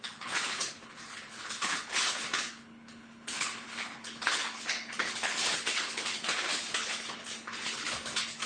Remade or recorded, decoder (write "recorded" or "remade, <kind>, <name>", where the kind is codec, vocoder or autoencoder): remade, codec, HILCodec